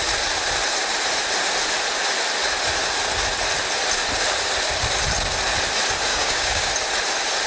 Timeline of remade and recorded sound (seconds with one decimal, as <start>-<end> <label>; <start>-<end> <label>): 0.0-6.1 recorded; 6.1-6.7 remade; 6.7-7.5 recorded